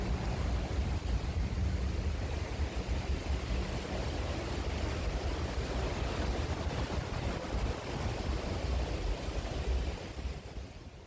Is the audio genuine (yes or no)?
yes